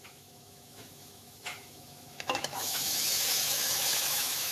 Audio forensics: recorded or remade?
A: remade